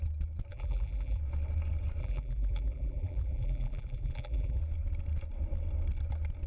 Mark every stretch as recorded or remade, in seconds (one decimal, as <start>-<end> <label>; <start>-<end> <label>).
0.0-0.5 recorded; 0.5-1.2 remade; 1.2-2.0 recorded; 2.0-4.6 remade; 4.6-6.5 recorded